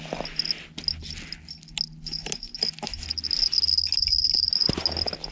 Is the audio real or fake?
real